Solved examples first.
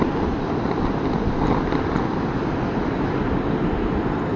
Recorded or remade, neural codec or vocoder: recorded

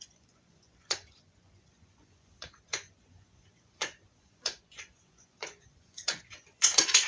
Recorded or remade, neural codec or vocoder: remade, vocoder, Vocos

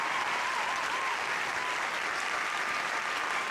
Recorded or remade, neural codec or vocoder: recorded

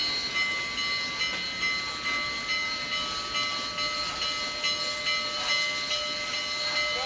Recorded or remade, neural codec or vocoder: recorded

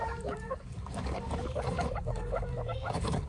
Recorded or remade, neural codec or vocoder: remade, codec, DAC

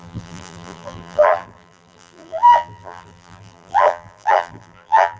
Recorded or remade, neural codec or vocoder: remade, vocoder, BigVGAN v2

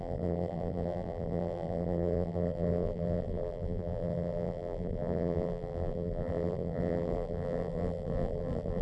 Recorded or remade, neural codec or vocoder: remade, vocoder, BigVGAN v2